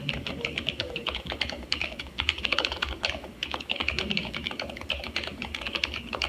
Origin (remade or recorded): remade